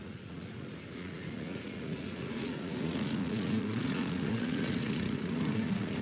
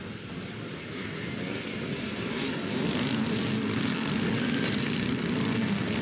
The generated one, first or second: first